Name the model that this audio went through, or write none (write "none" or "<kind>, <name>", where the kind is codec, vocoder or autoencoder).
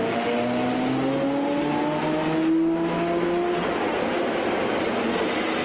none